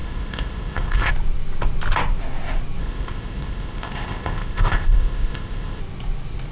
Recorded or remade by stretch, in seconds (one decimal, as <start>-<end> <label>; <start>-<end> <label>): 0.0-1.1 remade; 1.1-2.8 recorded; 2.8-5.8 remade; 5.8-6.5 recorded